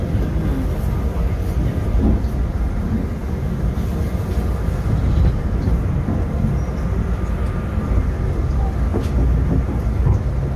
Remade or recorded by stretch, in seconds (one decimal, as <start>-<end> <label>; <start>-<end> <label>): 0.0-10.6 recorded